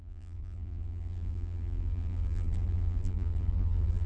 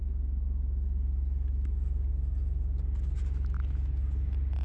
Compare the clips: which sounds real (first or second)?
second